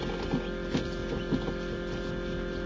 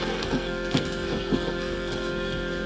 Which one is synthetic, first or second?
second